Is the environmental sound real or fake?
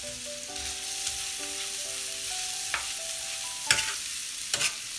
real